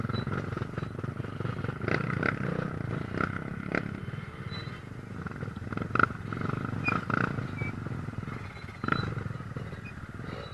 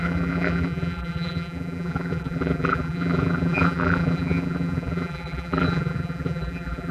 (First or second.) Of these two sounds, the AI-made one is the second